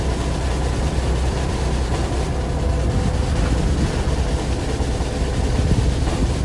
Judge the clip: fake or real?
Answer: real